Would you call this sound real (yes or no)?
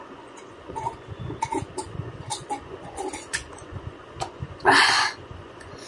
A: no